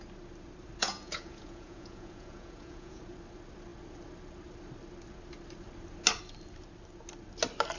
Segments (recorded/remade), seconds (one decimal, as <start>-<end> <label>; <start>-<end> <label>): 0.0-0.8 recorded; 0.8-3.0 remade; 3.0-7.8 recorded